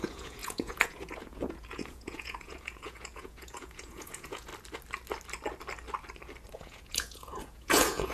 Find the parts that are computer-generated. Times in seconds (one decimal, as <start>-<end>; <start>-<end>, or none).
0.0-4.5; 6.5-8.1